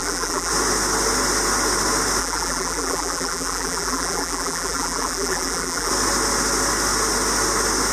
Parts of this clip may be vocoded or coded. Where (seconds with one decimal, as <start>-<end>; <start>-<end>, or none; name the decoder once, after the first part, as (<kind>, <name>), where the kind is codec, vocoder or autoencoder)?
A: 0.0-0.5 (vocoder, BigVGAN v2); 2.2-5.9

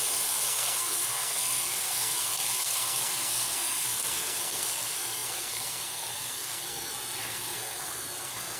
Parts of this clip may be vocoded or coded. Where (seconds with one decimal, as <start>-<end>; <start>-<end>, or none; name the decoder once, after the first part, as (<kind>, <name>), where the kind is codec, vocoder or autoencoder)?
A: 0.0-8.6 (codec, SNAC)

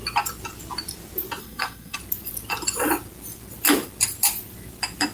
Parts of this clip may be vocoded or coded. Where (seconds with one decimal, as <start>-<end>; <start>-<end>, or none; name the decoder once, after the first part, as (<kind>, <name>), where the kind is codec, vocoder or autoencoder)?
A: 1.4-2.0 (codec, SNAC)

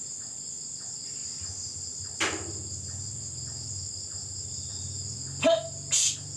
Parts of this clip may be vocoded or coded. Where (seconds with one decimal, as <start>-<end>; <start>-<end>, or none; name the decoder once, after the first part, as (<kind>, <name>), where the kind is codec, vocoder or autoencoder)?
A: none